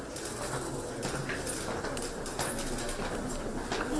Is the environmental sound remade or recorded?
recorded